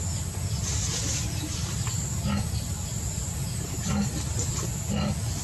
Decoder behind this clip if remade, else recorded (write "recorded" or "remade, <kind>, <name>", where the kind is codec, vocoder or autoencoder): recorded